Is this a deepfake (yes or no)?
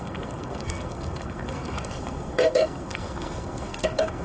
yes